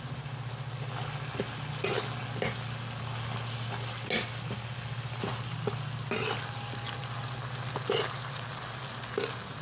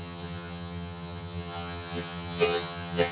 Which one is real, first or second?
first